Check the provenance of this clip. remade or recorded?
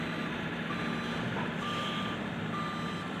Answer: recorded